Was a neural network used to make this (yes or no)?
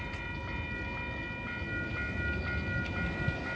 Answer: no